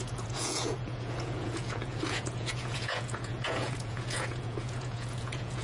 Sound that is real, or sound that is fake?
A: fake